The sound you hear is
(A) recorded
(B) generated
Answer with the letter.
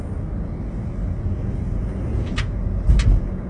A